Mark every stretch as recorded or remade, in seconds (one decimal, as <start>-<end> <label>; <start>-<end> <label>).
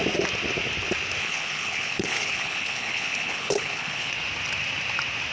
0.0-1.2 recorded; 1.2-4.1 remade; 4.1-5.3 recorded